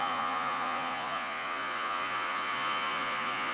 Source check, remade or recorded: remade